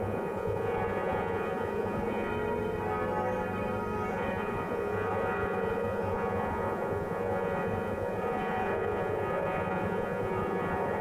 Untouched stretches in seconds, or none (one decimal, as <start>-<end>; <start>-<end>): 2.3-4.1